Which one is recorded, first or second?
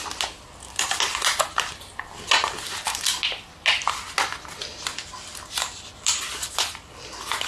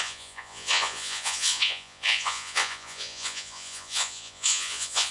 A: first